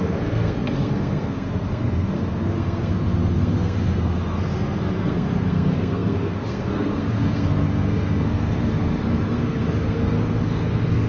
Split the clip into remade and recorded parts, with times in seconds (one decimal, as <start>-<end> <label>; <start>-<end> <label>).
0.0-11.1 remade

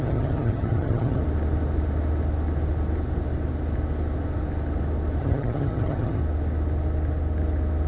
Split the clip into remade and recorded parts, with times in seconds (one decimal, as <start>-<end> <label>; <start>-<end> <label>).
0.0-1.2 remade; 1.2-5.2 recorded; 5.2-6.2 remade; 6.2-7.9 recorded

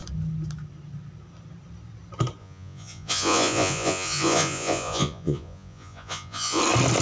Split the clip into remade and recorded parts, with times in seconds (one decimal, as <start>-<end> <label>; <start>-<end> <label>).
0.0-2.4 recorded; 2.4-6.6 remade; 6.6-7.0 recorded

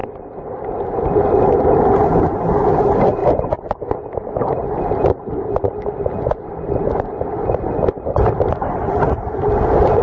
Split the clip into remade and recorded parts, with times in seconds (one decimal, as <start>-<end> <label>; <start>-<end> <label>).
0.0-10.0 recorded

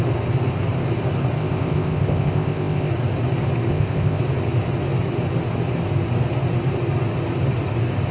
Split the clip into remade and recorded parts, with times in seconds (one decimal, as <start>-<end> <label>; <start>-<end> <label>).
0.0-1.4 recorded; 1.4-2.9 remade; 2.9-3.7 recorded; 3.7-4.2 remade; 4.2-8.1 recorded

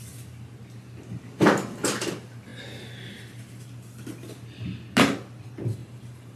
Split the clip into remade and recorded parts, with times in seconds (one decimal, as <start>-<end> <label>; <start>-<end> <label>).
0.0-5.8 recorded; 5.8-6.4 remade